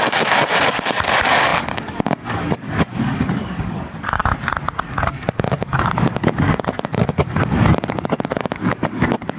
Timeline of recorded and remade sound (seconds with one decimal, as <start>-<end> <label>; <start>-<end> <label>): 0.0-4.2 remade; 4.2-4.8 recorded; 4.8-9.4 remade